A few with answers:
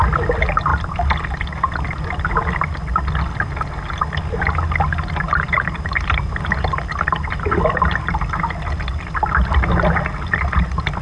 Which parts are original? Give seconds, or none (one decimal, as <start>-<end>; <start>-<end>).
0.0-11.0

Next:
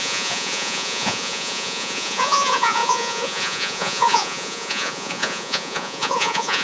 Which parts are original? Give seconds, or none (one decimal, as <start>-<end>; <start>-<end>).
none

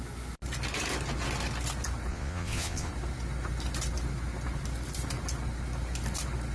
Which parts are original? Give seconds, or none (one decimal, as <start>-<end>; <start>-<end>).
0.0-2.1; 2.9-6.5

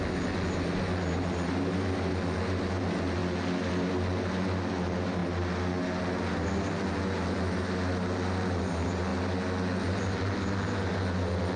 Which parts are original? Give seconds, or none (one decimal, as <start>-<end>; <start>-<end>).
0.0-11.6